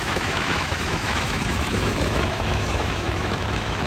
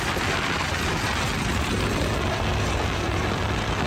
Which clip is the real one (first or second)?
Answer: second